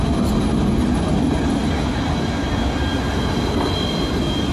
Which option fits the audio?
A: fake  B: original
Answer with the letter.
B